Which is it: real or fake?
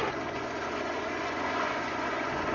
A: fake